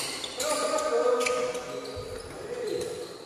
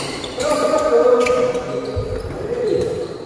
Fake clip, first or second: second